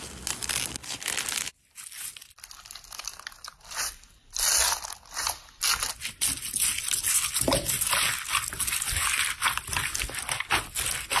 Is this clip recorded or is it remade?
recorded